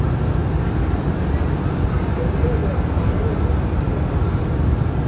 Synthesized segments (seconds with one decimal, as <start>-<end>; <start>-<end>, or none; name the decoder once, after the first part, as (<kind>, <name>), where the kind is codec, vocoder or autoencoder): 0.4-1.5 (vocoder, BigVGAN v2); 2.6-3.2